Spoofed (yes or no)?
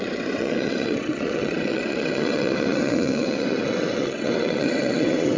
yes